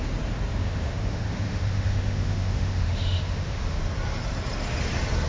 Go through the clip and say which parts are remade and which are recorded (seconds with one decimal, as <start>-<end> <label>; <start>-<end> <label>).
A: 0.0-0.6 recorded; 0.6-3.8 remade; 3.8-5.3 recorded